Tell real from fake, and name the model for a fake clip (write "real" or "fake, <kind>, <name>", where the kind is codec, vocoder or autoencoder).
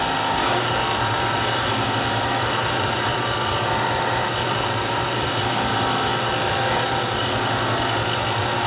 real